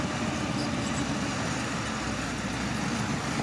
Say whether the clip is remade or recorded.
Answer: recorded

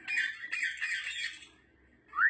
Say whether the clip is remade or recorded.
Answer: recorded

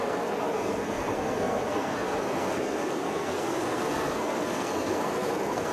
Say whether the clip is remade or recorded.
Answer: remade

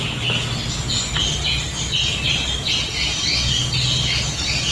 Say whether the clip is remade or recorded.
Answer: recorded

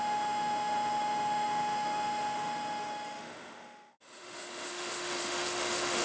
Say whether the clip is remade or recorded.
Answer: remade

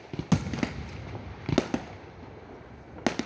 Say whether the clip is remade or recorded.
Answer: recorded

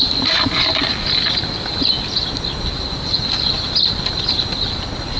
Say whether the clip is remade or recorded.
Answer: recorded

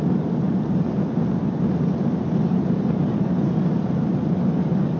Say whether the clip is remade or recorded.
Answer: recorded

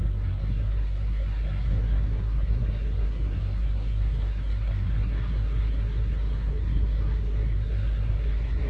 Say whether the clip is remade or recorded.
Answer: remade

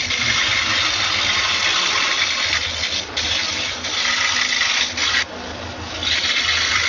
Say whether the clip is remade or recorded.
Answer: recorded